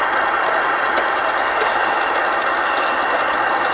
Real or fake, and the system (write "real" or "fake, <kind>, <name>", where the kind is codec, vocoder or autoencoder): real